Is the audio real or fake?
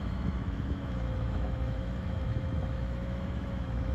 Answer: fake